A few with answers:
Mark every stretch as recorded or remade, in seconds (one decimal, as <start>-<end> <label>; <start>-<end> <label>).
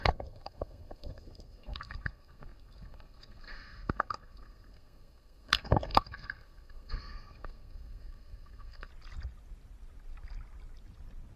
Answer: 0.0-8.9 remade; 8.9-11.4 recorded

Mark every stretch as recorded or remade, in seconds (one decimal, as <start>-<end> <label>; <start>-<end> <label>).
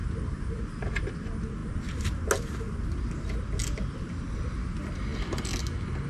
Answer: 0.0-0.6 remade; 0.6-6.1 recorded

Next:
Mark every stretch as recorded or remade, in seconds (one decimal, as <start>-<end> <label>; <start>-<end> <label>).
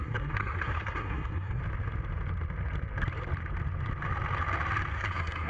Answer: 0.0-1.6 remade; 1.6-4.9 recorded; 4.9-5.5 remade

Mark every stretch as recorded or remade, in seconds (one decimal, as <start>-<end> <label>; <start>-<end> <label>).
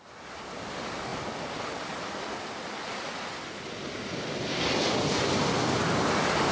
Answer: 0.0-6.5 recorded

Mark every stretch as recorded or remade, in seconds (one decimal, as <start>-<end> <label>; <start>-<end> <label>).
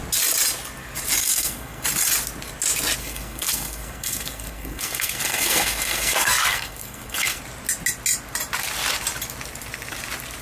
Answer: 0.0-1.2 recorded; 1.2-1.8 remade; 1.8-3.0 recorded; 3.0-7.4 remade; 7.4-10.4 recorded